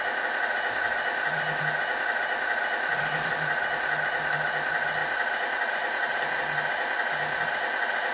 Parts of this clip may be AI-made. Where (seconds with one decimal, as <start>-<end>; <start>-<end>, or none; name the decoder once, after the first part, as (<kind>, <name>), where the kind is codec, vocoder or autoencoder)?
5.0-6.2 (vocoder, BigVGAN v2)